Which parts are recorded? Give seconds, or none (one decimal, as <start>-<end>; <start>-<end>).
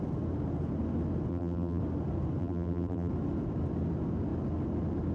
0.0-1.3; 1.8-2.4; 3.1-5.1